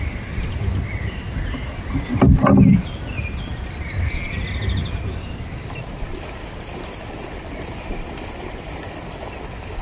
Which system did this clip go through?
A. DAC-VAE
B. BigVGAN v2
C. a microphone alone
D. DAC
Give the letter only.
C